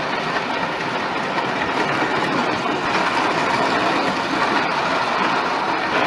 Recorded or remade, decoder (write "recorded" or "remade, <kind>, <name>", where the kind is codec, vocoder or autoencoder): recorded